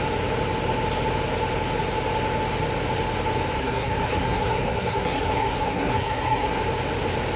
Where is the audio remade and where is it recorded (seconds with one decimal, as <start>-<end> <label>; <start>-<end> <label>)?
0.0-3.6 recorded; 3.6-6.6 remade; 6.6-7.4 recorded